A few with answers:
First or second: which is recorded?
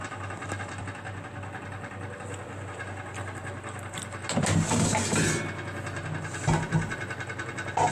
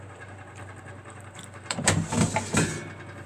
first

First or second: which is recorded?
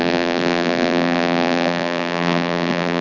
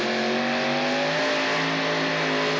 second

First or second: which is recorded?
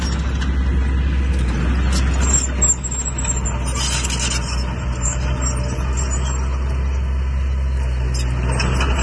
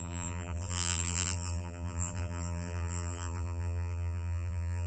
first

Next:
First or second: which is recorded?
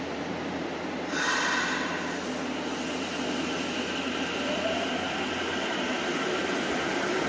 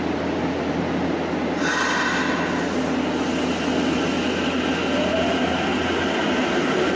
second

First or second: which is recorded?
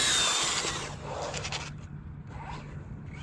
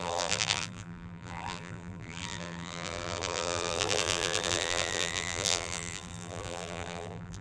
first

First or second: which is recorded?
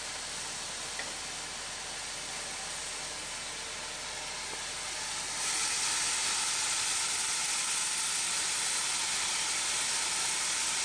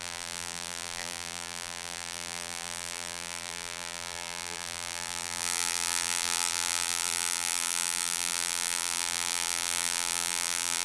first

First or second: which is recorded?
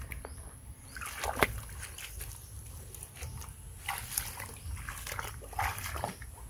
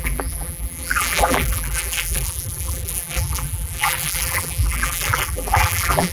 first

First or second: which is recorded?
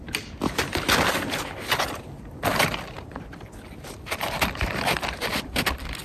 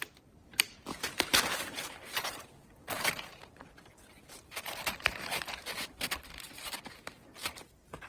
first